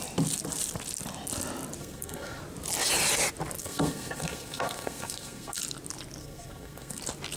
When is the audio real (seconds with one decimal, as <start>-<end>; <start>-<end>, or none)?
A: 0.0-1.8; 2.4-3.6; 5.6-6.2; 7.0-7.4